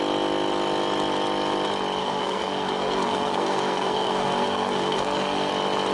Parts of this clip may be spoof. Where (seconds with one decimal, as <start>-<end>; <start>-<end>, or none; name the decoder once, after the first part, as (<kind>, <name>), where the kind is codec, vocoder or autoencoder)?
2.0-5.5 (codec, SNAC)